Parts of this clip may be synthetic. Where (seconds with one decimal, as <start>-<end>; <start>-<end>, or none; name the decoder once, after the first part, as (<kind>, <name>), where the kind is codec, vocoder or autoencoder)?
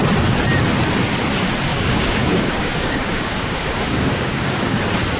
1.7-4.8 (codec, DAC)